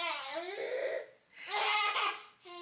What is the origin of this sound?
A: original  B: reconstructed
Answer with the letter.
A